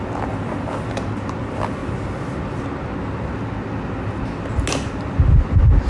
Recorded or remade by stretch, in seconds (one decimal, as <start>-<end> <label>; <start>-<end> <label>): 0.0-5.9 recorded